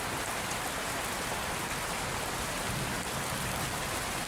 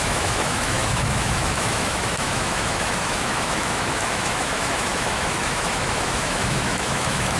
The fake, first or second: second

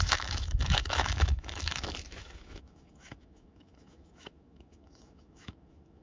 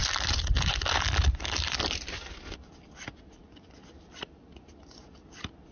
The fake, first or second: first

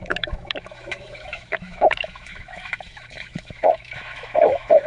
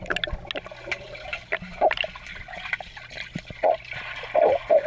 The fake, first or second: first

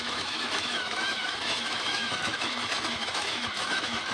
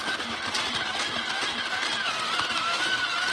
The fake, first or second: first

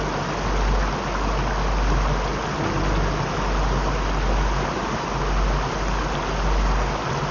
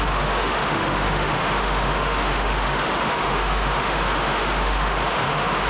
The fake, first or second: second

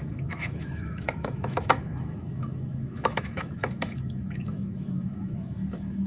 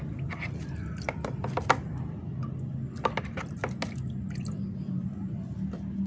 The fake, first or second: first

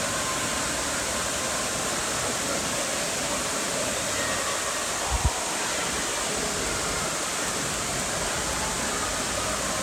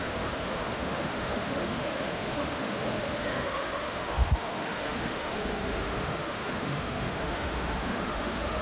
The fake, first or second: second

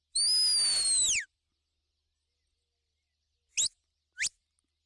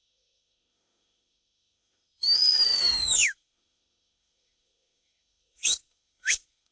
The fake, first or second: second